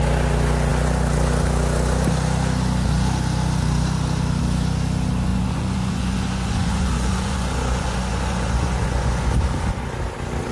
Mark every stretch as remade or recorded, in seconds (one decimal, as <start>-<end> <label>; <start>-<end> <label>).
0.0-5.3 recorded; 5.3-9.4 remade; 9.4-10.5 recorded